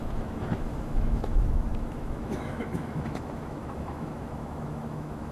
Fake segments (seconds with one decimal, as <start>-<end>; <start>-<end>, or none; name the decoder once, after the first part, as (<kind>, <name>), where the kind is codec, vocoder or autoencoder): 0.0-5.3 (autoencoder, DAC-VAE)